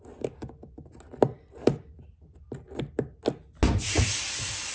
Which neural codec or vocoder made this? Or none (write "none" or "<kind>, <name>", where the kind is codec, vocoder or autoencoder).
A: none